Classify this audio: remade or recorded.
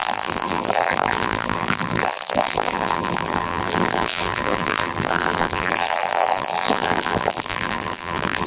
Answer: remade